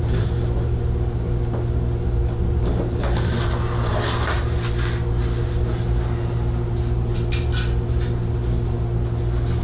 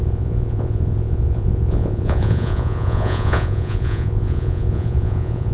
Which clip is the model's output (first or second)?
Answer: second